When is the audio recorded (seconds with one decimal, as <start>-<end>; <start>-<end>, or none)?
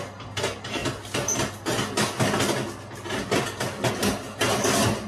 0.0-5.1